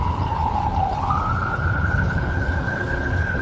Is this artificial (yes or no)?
yes